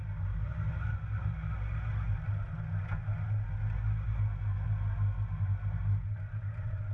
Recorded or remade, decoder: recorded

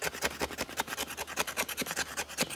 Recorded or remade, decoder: recorded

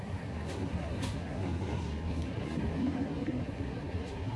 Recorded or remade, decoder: remade, codec, SNAC